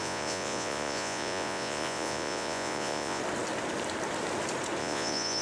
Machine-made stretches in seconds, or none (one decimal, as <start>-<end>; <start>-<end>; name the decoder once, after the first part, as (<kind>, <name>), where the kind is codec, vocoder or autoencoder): 0.0-3.2 (vocoder, Vocos); 4.8-5.4